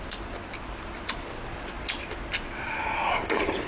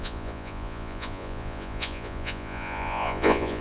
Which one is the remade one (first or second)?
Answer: second